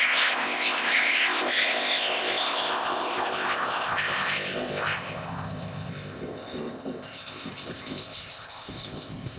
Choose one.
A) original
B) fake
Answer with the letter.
B